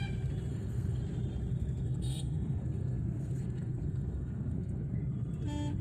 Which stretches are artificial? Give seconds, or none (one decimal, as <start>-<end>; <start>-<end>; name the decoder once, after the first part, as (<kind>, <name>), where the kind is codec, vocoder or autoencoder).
0.5-1.0 (codec, SNAC); 1.5-5.0